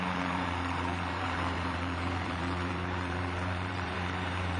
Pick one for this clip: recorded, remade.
remade